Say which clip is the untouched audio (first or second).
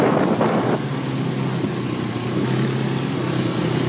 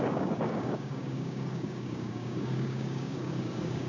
first